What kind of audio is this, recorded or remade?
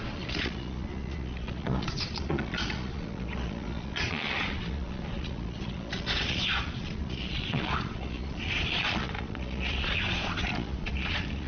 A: remade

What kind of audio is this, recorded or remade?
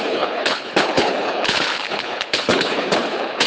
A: remade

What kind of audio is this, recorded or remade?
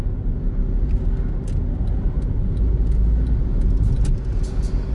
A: recorded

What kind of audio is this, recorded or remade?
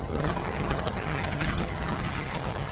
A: remade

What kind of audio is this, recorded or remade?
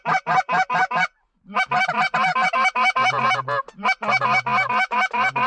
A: recorded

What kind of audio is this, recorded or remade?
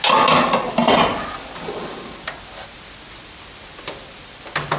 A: recorded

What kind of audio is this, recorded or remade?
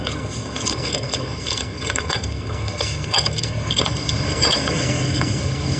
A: remade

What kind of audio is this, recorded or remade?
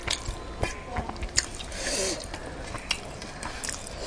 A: recorded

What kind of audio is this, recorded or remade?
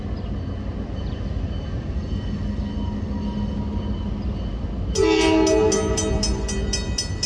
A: recorded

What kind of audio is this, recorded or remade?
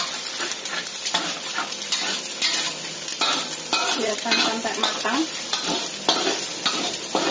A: recorded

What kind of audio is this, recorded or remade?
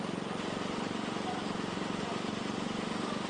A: recorded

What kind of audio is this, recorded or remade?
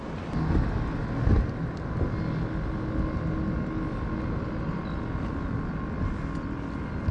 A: recorded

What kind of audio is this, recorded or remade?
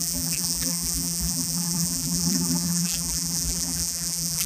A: remade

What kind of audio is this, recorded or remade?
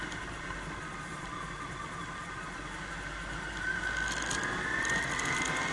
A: recorded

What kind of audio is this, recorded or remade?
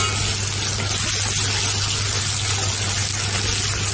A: recorded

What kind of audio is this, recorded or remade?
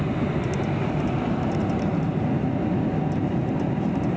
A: recorded